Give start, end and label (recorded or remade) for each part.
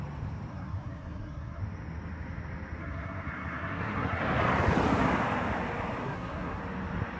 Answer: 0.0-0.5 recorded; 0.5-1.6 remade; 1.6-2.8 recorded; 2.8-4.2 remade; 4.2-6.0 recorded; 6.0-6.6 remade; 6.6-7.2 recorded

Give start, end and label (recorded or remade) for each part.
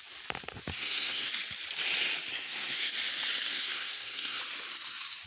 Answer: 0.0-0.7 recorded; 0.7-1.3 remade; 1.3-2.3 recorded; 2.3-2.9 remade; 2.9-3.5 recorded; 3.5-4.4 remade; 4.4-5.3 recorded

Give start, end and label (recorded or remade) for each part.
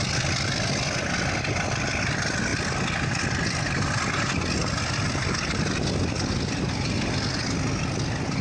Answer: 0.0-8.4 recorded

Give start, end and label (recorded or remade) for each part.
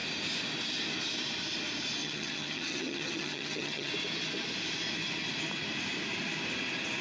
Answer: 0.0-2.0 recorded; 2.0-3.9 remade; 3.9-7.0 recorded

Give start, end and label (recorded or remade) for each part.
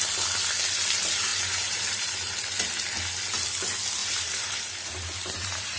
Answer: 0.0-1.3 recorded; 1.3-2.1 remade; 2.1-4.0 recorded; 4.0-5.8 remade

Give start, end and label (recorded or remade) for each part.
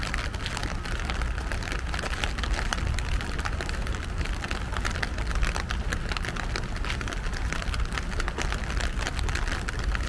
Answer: 0.0-10.1 recorded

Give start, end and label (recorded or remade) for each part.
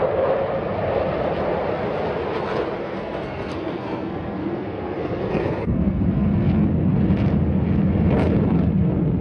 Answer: 0.0-2.8 recorded; 2.8-6.5 remade; 6.5-9.2 recorded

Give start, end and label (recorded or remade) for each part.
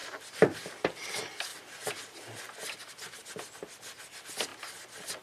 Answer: 0.0-5.2 recorded